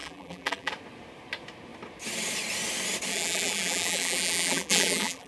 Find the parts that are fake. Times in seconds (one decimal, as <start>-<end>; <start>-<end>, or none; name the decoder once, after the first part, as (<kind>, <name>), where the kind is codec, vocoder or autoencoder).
0.0-0.7 (vocoder, BigVGAN v2); 3.1-5.3